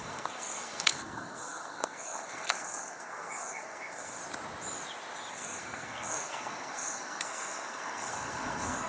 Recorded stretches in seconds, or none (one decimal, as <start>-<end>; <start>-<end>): 4.2-5.3